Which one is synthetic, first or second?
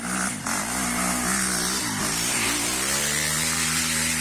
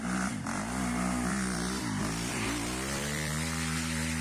second